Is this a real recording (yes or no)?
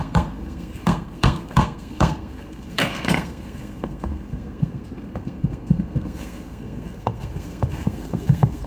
no